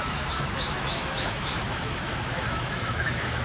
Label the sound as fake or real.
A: fake